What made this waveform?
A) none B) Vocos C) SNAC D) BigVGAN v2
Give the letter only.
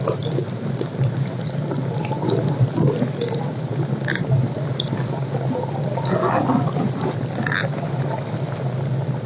A